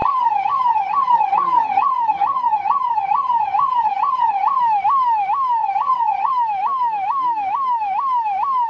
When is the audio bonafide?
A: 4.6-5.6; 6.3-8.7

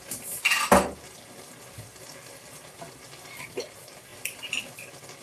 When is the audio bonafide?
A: 0.0-4.1; 4.6-5.2

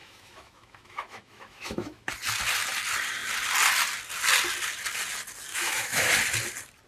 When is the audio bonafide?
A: 2.1-5.5; 6.1-6.9

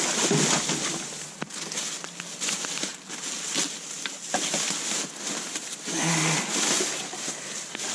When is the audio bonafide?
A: 0.0-7.9

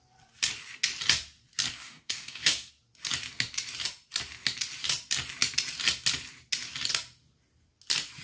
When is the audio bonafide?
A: 0.0-1.8; 2.7-8.2

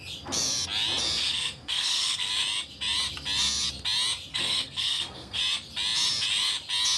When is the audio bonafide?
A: 0.0-1.2; 2.3-4.3; 5.4-7.0

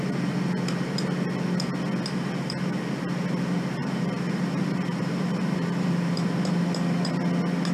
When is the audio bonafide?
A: 0.0-3.8; 7.2-7.7

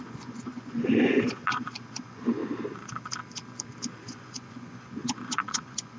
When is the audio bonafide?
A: 2.4-4.0